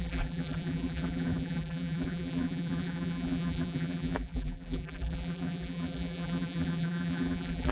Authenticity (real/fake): fake